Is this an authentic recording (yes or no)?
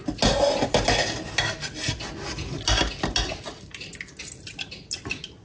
yes